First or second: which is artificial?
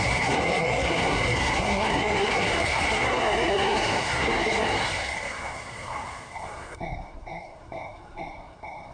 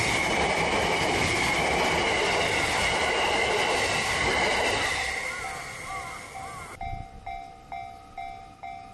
first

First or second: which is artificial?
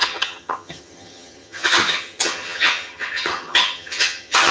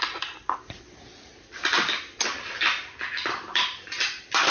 first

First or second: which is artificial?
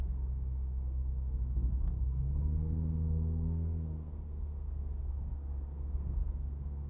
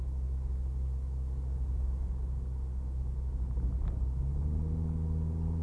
first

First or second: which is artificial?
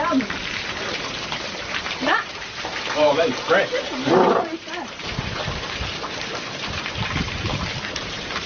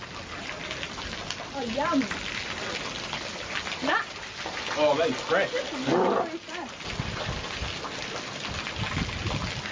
first